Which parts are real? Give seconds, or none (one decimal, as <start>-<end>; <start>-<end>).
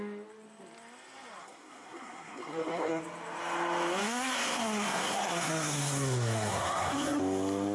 0.0-1.4; 3.0-4.0; 7.2-7.7